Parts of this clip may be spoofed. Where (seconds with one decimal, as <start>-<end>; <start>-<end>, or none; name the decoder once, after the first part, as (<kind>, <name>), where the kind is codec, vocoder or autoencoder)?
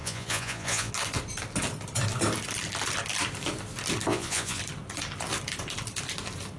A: 0.0-0.9 (vocoder, Vocos); 4.1-4.6